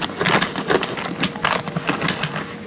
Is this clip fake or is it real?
real